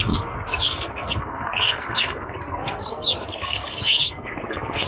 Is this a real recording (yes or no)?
no